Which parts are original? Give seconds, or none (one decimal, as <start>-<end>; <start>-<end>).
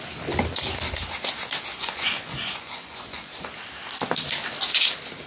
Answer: 0.0-1.7; 3.3-5.3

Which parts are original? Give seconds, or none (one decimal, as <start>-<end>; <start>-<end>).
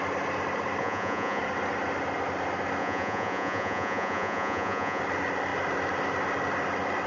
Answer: 0.0-0.8; 1.4-2.8; 5.0-7.1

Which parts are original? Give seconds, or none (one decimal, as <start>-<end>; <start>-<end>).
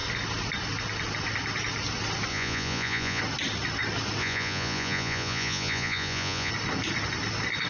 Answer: 0.0-2.3; 3.2-4.2; 6.5-7.7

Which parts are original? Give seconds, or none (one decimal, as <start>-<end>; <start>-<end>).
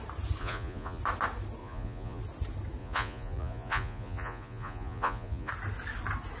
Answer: 0.0-0.4; 1.0-1.6; 2.2-2.8; 5.5-6.4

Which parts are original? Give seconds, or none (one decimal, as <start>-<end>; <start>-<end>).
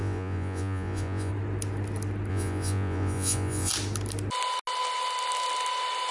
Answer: 1.3-2.3; 3.7-6.1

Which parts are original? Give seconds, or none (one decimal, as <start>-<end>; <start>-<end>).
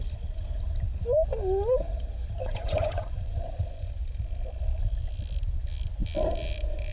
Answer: 0.0-2.4; 3.9-6.9